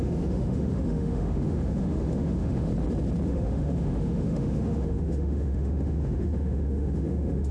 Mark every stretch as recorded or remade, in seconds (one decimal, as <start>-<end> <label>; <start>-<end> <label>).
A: 0.0-2.7 remade; 2.7-3.3 recorded; 3.3-7.5 remade